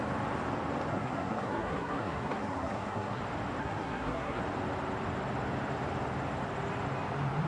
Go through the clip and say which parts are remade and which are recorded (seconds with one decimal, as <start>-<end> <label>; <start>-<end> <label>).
0.0-0.9 recorded; 0.9-3.2 remade; 3.2-3.6 recorded; 3.6-4.4 remade; 4.4-7.5 recorded